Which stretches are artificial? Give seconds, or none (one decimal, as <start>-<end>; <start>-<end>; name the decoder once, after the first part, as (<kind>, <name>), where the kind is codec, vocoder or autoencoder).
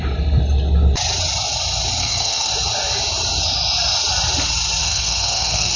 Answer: 2.0-2.5 (codec, SNAC); 4.8-5.8